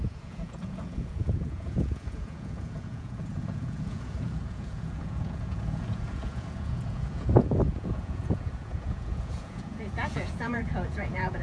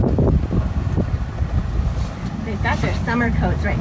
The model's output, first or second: first